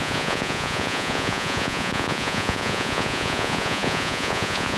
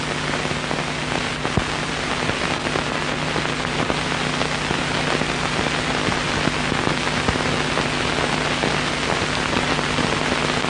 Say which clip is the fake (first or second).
first